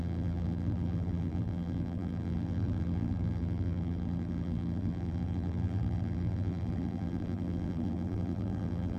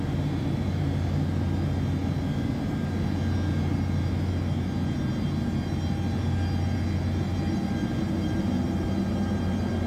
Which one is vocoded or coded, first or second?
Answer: first